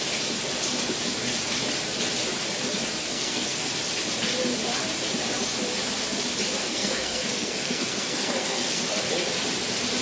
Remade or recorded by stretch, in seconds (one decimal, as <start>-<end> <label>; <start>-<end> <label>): 0.0-3.1 recorded; 3.1-3.7 remade; 3.7-6.6 recorded; 6.6-9.0 remade; 9.0-10.0 recorded